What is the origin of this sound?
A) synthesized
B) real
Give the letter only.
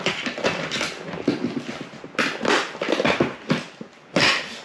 B